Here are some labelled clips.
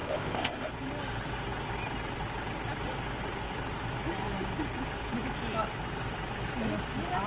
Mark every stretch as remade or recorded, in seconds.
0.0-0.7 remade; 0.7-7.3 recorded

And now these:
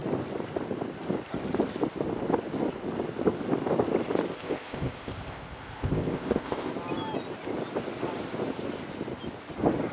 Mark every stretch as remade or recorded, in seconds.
0.0-4.3 recorded; 4.3-6.7 remade; 6.7-9.9 recorded

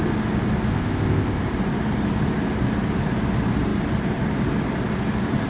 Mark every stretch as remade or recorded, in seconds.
0.0-0.7 recorded; 0.7-1.4 remade; 1.4-5.5 recorded

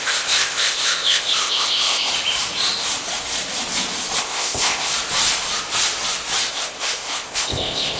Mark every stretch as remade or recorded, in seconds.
0.0-2.1 remade; 2.1-4.2 recorded; 4.2-4.9 remade; 4.9-6.5 recorded; 6.5-8.0 remade

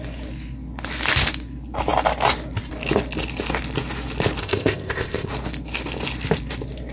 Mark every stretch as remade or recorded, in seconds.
0.0-4.4 recorded; 4.4-5.3 remade; 5.3-6.9 recorded

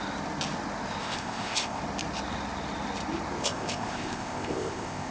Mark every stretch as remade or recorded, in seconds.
0.0-1.0 recorded; 1.0-1.8 remade; 1.8-3.4 recorded; 3.4-5.1 remade